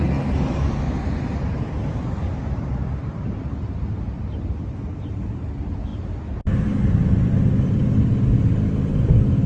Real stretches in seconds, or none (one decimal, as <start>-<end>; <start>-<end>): 0.0-9.5